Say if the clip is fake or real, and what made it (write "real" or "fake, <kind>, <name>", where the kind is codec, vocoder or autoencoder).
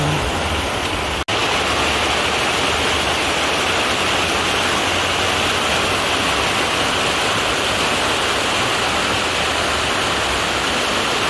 real